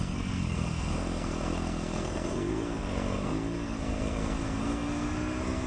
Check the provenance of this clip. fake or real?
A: fake